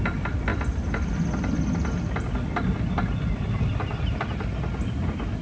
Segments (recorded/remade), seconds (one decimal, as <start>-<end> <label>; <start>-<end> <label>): 0.0-5.4 recorded